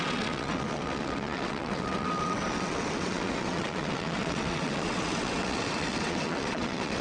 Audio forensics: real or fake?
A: fake